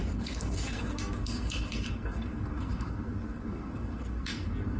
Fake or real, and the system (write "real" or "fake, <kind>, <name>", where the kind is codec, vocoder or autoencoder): fake, codec, SNAC